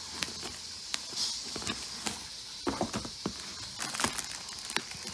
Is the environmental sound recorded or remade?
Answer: recorded